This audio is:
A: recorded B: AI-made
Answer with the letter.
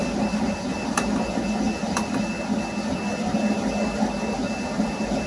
A